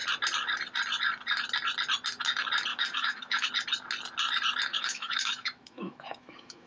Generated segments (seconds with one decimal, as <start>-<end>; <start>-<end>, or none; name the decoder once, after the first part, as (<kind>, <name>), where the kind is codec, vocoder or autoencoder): 2.7-3.5 (autoencoder, DAC-VAE); 4.7-6.7